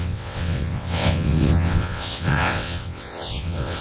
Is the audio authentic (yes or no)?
no